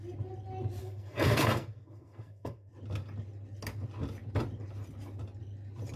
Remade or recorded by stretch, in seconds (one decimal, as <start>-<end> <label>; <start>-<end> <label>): 0.0-0.8 recorded; 0.8-2.7 remade; 2.7-6.0 recorded